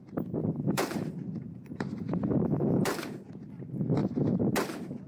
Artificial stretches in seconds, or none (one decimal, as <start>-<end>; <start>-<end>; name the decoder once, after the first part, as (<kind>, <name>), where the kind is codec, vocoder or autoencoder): 0.4-3.5 (vocoder, BigVGAN v2)